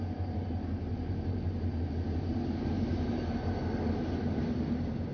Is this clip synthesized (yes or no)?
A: no